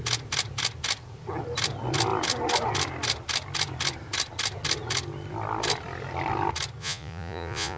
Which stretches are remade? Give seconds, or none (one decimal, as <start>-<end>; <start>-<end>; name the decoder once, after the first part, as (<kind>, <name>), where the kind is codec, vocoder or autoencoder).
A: 6.8-7.8 (vocoder, Vocos)